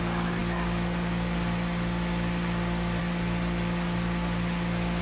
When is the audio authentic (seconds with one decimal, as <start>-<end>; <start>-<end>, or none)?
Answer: 0.0-5.0